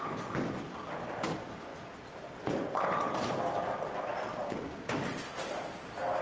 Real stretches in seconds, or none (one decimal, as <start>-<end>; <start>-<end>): 0.0-4.4; 4.9-6.2